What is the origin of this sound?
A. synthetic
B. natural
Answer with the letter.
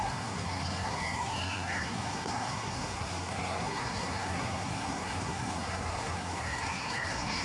A